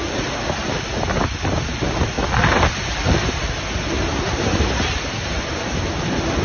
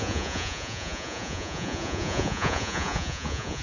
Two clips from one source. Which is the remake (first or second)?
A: second